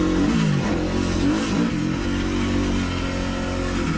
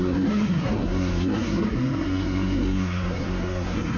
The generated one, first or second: second